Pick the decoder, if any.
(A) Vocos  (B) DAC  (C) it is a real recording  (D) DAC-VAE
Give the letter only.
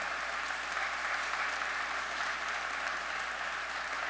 C